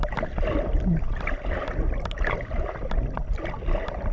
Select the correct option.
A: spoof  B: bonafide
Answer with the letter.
B